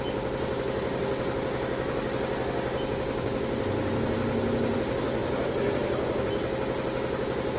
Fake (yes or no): no